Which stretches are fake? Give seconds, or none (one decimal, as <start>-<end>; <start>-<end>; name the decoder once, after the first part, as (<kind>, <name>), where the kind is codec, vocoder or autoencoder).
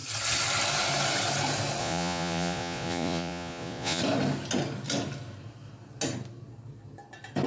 1.8-4.0 (vocoder, Vocos)